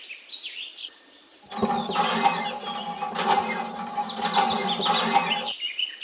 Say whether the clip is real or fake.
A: real